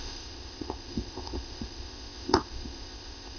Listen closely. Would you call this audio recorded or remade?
remade